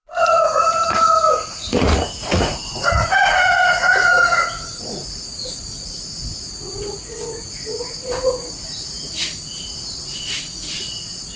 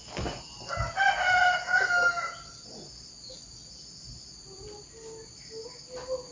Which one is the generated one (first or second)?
first